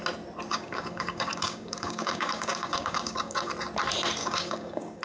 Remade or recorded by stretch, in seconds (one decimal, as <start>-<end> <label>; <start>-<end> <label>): 0.0-0.5 recorded; 0.5-3.5 remade; 3.5-4.2 recorded; 4.2-5.0 remade